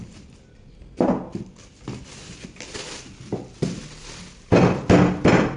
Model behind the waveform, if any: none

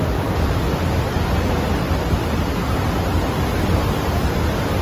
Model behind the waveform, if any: none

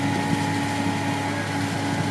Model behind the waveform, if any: none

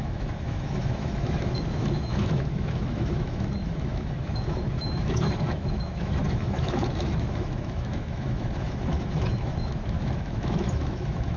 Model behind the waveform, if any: autoencoder, DAC-VAE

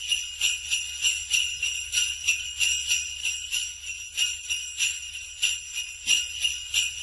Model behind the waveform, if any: none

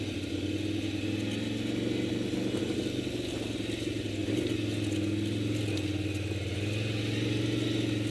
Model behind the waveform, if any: none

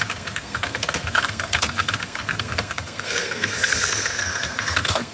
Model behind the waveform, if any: codec, SNAC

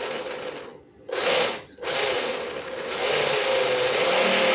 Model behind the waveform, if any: none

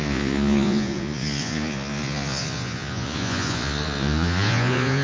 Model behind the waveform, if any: vocoder, Vocos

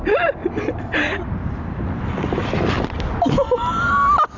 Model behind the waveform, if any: none